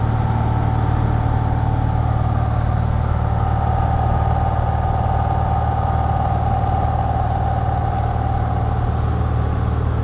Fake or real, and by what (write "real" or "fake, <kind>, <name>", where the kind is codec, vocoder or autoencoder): real